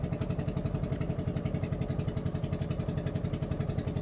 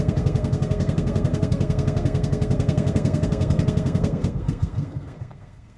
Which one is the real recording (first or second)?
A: first